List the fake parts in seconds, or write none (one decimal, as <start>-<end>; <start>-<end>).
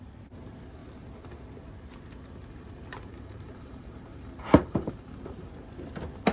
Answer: 2.9-5.5